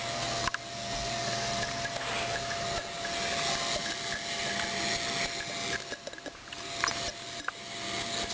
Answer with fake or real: real